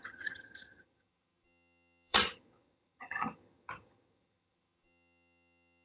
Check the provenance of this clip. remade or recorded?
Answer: remade